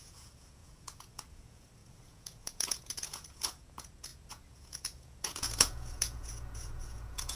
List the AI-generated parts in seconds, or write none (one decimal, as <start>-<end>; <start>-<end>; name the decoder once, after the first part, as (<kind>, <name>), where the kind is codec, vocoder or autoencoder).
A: 0.0-7.4 (vocoder, Vocos)